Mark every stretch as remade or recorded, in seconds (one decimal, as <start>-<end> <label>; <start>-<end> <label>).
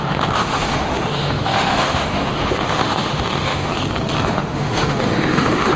0.0-3.7 remade; 3.7-4.3 recorded; 4.3-5.8 remade